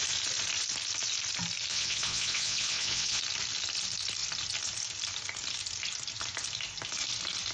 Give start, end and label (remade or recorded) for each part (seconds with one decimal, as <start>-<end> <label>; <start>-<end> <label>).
0.0-1.7 recorded; 1.7-3.2 remade; 3.2-7.5 recorded